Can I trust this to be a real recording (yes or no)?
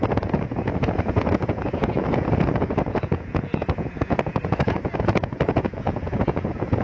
no